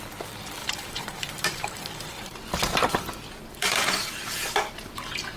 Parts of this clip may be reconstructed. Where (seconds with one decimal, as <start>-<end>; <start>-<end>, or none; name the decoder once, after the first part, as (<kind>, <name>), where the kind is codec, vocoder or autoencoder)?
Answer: 0.6-2.4 (vocoder, BigVGAN v2); 3.4-5.4